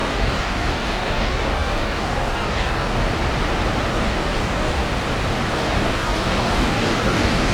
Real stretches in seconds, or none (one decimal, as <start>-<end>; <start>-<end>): 3.0-3.9; 4.8-5.5